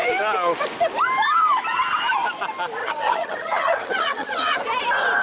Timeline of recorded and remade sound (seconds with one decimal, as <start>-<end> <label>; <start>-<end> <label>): 0.0-2.8 recorded; 2.8-4.6 remade; 4.6-5.2 recorded